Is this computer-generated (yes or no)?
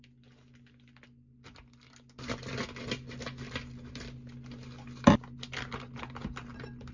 no